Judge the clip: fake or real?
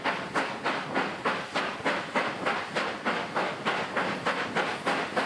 real